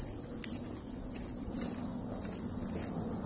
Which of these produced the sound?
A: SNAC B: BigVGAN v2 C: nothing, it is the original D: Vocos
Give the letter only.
C